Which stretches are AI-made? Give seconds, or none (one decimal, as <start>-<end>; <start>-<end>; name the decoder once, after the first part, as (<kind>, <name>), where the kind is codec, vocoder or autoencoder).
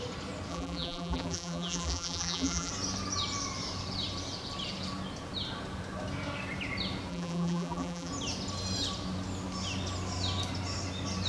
0.5-2.7 (vocoder, BigVGAN v2); 7.1-8.1